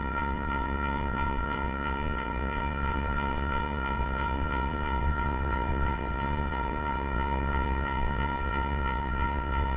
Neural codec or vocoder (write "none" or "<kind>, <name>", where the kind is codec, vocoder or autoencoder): vocoder, WaveNeXt